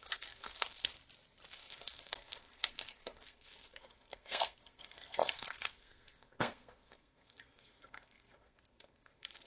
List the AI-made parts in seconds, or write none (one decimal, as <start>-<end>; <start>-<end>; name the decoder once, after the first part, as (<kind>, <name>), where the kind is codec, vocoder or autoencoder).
0.0-0.9 (codec, SNAC); 1.5-9.5